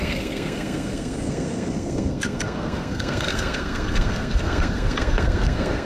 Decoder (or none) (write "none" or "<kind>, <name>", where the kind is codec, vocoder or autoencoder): codec, SNAC